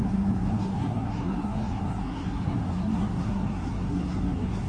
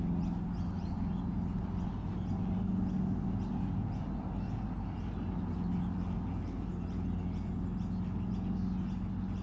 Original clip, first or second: second